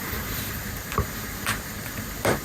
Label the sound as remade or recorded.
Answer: remade